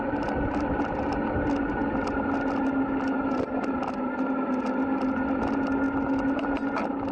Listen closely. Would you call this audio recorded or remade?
recorded